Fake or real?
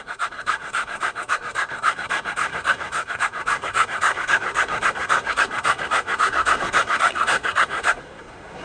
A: fake